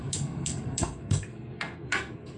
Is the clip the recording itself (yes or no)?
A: no